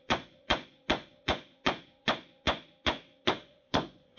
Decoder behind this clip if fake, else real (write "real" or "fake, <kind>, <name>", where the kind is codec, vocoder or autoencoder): fake, vocoder, Vocos